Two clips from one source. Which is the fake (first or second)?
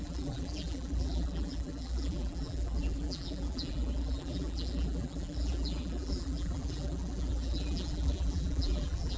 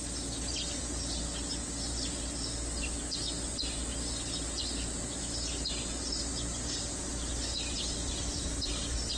first